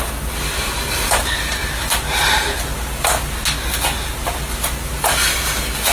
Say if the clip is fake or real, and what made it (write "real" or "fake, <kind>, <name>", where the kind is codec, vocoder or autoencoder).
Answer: real